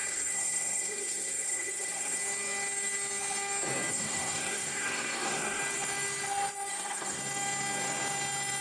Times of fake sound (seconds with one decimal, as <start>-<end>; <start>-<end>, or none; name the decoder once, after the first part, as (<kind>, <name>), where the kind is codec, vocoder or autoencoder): 0.0-2.2 (codec, SNAC); 3.9-5.6; 6.7-7.2